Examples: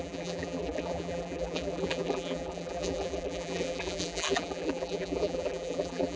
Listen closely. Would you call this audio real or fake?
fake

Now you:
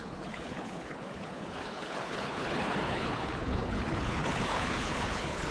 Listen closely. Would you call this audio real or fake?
fake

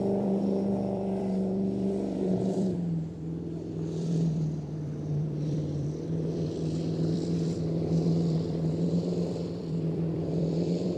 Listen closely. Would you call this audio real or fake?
fake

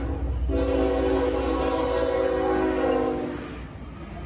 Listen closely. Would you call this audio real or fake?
real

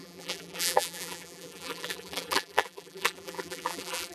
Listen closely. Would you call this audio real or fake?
fake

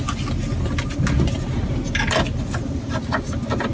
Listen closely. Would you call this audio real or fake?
real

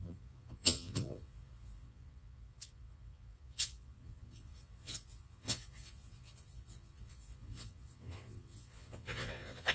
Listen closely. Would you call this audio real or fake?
fake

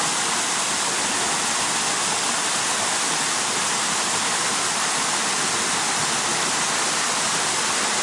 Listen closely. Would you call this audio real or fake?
real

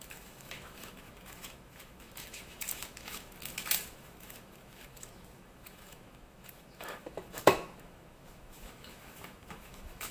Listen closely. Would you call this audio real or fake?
fake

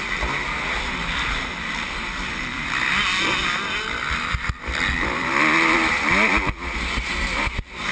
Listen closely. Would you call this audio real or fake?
real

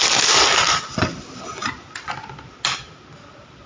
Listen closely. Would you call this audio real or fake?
real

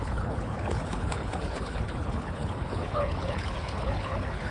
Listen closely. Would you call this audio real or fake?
fake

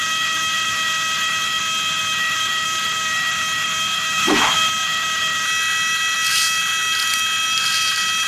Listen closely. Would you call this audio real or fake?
real